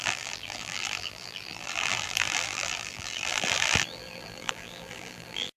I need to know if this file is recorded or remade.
remade